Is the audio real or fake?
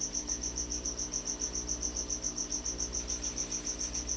real